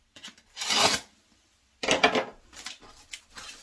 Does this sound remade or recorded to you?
recorded